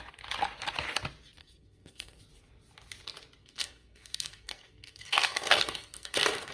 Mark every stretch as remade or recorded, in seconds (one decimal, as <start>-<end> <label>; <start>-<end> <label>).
0.0-1.4 recorded; 1.4-2.2 remade; 2.2-3.4 recorded; 3.4-6.5 remade